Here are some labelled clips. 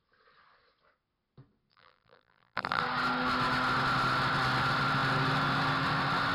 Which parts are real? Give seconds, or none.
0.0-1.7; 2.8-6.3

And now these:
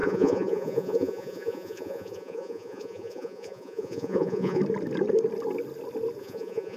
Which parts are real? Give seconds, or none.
4.6-6.2

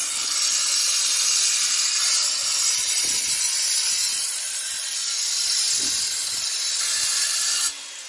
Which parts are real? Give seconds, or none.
0.0-7.1

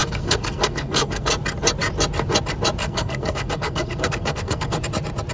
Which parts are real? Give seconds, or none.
1.3-2.8; 4.8-5.3